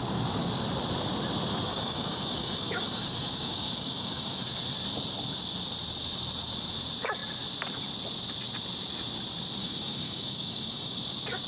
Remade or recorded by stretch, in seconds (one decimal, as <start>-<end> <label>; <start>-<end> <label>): 0.0-1.7 recorded; 1.7-4.4 remade; 4.4-9.6 recorded; 9.6-11.0 remade; 11.0-11.5 recorded